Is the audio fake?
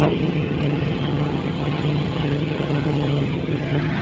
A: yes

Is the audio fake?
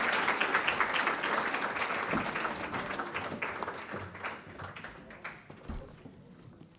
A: no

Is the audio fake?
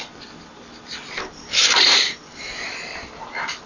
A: no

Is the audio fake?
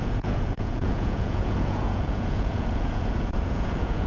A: yes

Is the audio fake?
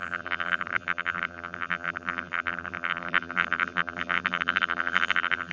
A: yes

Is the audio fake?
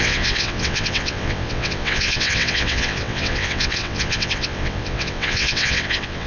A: yes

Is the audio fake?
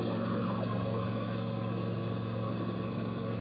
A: yes